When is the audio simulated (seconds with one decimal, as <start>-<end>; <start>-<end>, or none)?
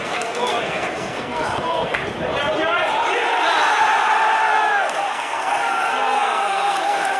0.0-2.0; 4.4-7.2